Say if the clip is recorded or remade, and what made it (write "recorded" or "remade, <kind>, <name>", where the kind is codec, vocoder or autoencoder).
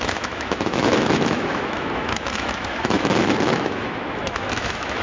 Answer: remade, autoencoder, DAC-VAE